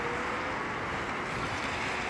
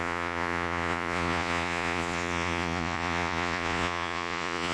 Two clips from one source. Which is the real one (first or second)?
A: first